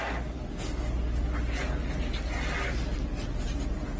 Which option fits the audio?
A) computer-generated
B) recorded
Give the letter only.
B